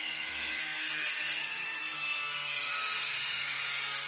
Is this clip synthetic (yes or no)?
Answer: yes